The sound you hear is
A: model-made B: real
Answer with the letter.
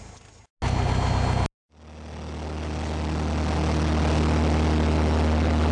B